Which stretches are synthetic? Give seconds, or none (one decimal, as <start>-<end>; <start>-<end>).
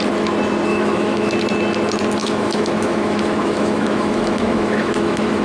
0.7-1.3; 2.2-5.4